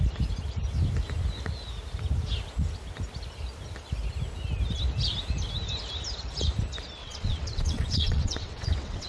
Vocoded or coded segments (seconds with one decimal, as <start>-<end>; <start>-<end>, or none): 7.0-9.1

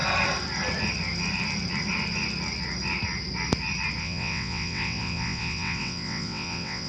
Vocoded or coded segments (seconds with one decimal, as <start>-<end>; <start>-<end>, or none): 4.0-6.9

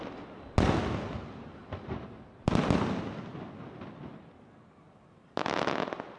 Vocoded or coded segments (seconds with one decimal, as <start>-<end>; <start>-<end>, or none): none

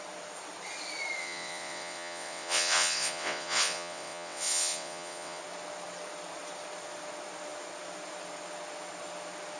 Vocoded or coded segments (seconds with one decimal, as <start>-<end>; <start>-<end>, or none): 1.2-5.4

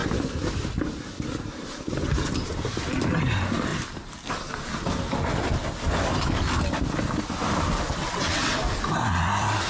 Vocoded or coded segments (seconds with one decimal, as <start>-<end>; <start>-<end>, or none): 8.0-8.6